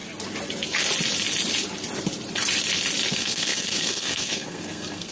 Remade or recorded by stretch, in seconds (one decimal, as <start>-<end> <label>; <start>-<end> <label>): 0.0-3.1 recorded; 3.1-5.1 remade